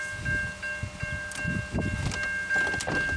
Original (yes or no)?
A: yes